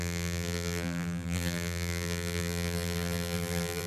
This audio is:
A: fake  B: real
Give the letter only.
A